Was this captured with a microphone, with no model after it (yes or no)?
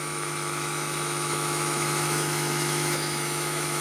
no